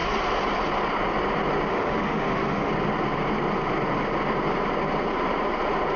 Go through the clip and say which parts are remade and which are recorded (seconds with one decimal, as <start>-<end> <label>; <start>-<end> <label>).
0.0-1.7 recorded; 1.7-2.7 remade; 2.7-6.0 recorded